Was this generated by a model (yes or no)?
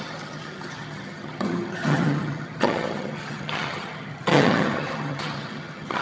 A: yes